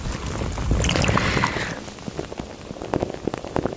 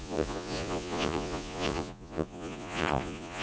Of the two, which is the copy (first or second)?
second